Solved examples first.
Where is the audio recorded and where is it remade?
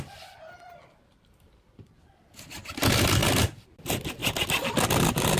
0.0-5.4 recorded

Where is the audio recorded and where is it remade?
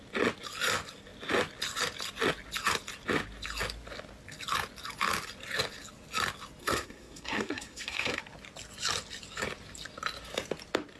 0.0-6.6 recorded; 6.6-8.2 remade; 8.2-11.0 recorded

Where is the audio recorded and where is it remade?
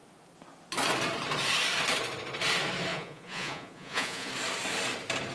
0.0-2.9 recorded; 2.9-4.3 remade; 4.3-5.3 recorded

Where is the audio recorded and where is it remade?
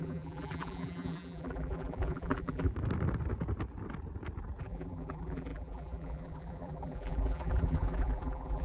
0.0-2.7 remade; 2.7-4.6 recorded; 4.6-8.6 remade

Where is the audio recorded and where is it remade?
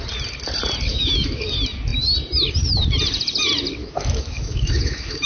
0.0-0.9 recorded; 0.9-1.5 remade; 1.5-3.8 recorded; 3.8-5.3 remade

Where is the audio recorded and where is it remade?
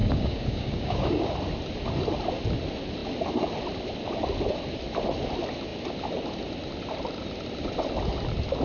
0.0-1.3 remade; 1.3-8.6 recorded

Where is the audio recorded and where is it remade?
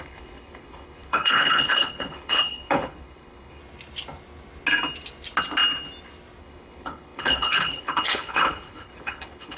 0.0-3.6 remade; 3.6-6.4 recorded; 6.4-9.6 remade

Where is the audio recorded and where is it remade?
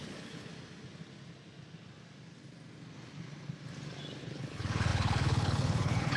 0.0-0.5 remade; 0.5-4.2 recorded; 4.2-6.2 remade